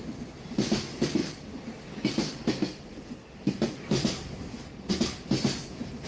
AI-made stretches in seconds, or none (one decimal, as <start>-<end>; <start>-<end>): none